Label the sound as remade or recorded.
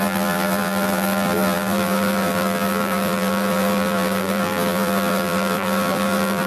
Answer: remade